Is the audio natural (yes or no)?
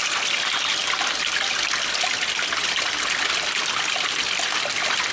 no